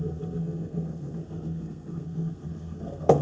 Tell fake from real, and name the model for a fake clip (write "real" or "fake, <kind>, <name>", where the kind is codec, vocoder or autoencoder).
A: fake, codec, SNAC